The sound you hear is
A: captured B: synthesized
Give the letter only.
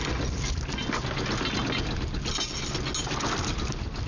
A